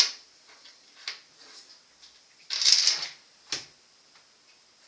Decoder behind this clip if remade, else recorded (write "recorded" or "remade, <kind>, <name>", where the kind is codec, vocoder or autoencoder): recorded